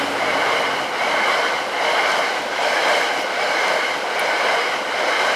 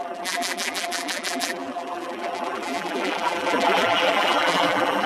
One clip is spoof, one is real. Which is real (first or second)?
first